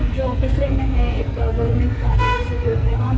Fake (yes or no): yes